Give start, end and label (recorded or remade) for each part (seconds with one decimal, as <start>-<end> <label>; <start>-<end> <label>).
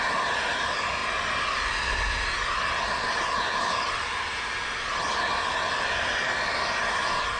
0.0-7.4 recorded